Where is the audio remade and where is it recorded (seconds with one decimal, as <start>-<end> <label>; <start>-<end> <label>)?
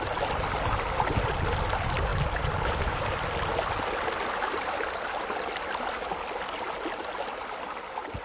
0.0-8.2 recorded